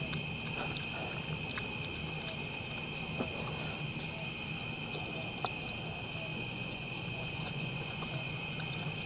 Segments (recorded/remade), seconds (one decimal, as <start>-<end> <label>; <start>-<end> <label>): 0.0-6.3 recorded; 6.3-8.6 remade; 8.6-9.1 recorded